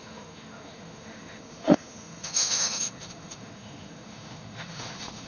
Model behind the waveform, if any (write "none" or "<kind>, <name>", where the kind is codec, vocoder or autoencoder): autoencoder, DAC-VAE